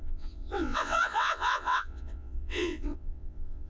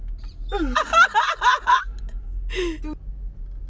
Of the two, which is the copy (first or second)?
first